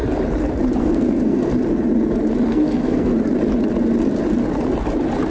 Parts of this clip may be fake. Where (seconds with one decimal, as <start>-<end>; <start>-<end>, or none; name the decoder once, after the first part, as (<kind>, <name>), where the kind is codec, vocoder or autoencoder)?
0.8-1.5 (codec, SNAC); 2.5-3.1